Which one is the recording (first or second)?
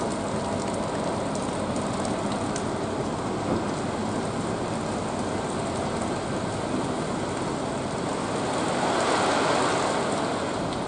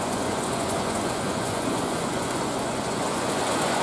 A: first